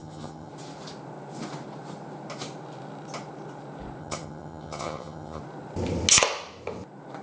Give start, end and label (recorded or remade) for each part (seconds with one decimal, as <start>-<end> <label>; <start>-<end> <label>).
0.0-0.5 remade; 0.5-4.0 recorded; 4.0-5.4 remade; 5.4-7.2 recorded